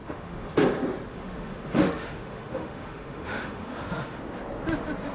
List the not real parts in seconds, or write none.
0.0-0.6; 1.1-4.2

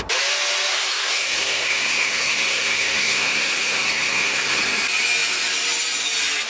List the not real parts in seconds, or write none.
0.7-4.6

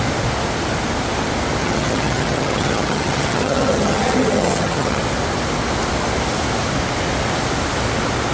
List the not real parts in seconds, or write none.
1.6-5.0

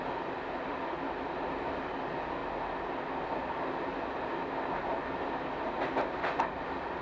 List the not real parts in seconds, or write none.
none